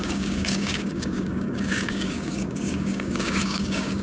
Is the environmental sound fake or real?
fake